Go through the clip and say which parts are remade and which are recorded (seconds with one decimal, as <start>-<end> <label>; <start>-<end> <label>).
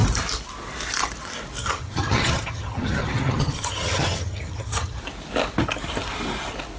0.0-1.6 recorded; 1.6-5.0 remade; 5.0-6.8 recorded